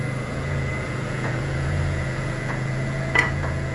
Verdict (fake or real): fake